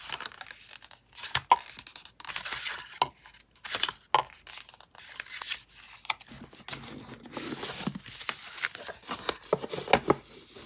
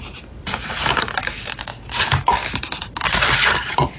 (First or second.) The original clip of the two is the first